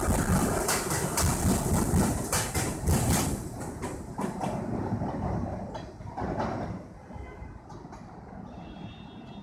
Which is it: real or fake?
real